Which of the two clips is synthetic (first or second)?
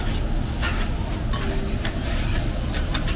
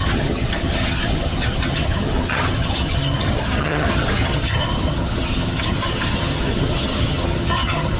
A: second